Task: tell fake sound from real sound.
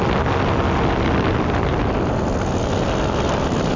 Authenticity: real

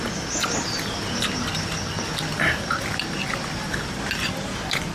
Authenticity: real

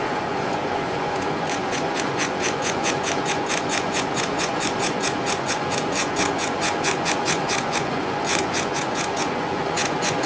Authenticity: fake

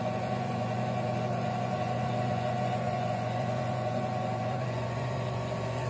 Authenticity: fake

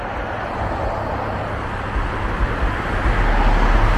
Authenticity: real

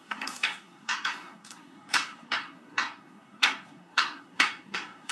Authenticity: fake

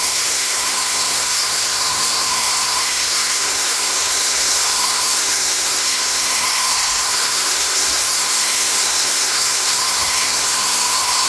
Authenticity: fake